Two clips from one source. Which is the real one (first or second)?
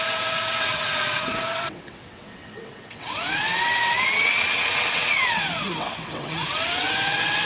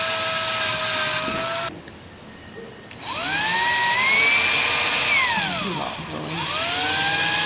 second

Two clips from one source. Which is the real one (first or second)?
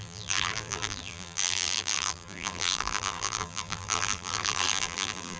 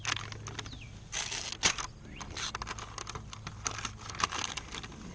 second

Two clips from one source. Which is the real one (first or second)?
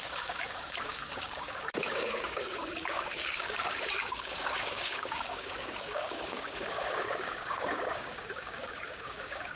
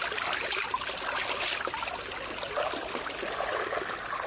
second